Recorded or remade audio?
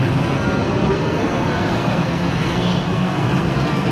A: remade